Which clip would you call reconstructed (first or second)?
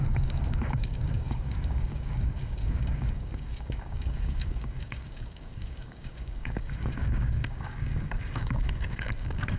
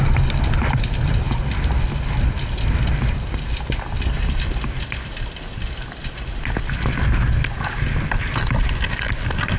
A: first